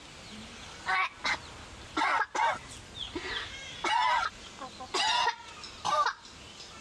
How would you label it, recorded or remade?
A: recorded